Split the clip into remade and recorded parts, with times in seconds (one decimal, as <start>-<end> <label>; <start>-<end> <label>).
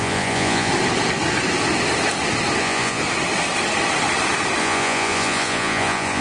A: 0.0-0.7 remade; 0.7-2.6 recorded; 2.6-3.0 remade; 3.0-4.6 recorded; 4.6-6.2 remade